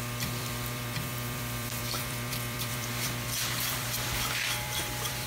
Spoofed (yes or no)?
yes